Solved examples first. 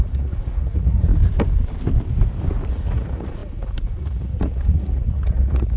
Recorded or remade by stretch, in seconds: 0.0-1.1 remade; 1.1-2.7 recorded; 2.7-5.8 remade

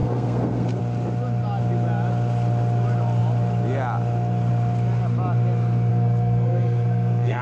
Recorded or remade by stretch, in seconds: 0.0-0.8 remade; 0.8-5.9 recorded; 5.9-7.4 remade

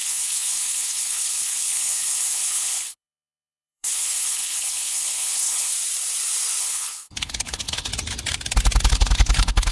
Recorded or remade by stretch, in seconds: 0.0-5.7 remade; 5.7-6.6 recorded; 6.6-7.9 remade; 7.9-8.9 recorded; 8.9-9.7 remade